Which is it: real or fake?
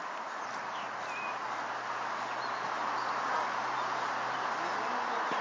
real